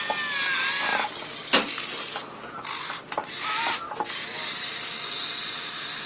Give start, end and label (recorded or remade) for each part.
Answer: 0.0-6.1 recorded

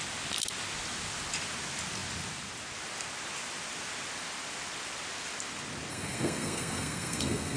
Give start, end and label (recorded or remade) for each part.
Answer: 0.0-5.9 recorded; 5.9-7.6 remade